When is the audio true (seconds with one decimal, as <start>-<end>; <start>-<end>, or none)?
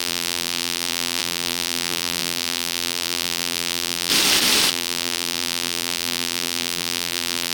4.1-4.7